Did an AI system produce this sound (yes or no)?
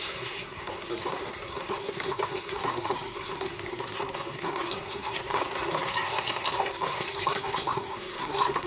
yes